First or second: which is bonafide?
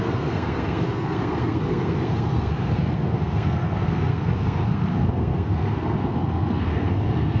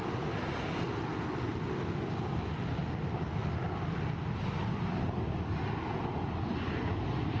second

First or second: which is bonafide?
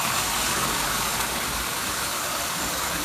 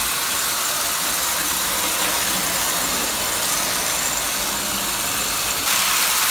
second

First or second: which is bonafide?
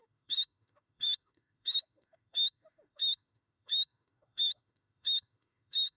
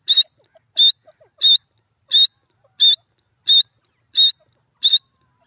second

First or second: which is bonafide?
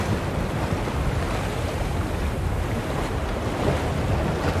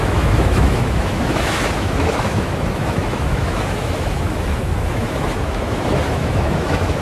first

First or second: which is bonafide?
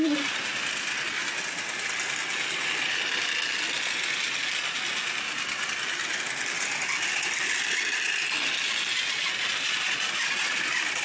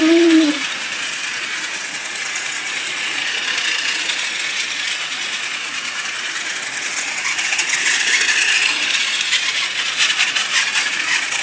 first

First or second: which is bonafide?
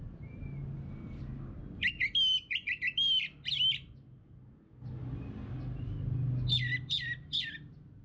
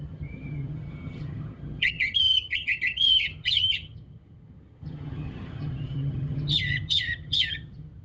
first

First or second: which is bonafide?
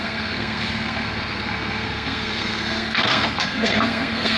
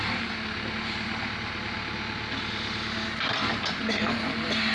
second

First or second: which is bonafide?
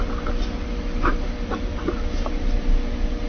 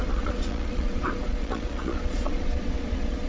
first